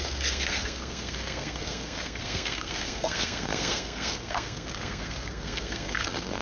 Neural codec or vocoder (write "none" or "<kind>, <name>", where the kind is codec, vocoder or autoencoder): codec, SNAC